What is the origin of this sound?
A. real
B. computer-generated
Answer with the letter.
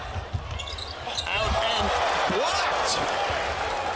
A